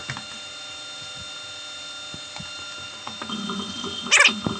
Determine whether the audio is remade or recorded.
recorded